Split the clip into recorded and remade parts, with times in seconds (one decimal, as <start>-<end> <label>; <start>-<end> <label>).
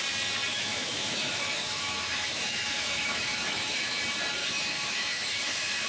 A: 0.0-0.5 recorded; 0.5-4.0 remade; 4.0-4.4 recorded; 4.4-5.9 remade